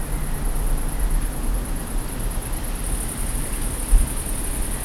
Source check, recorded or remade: recorded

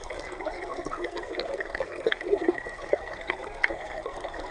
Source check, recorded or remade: remade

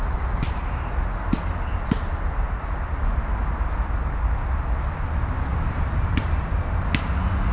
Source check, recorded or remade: recorded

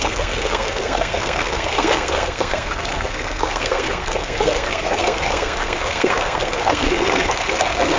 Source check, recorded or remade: remade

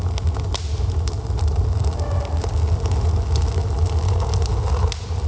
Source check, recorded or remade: recorded